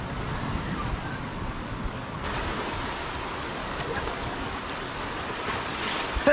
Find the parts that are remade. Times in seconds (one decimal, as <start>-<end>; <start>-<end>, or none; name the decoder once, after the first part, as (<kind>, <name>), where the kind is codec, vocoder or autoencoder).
1.3-2.4 (codec, DAC); 3.6-4.5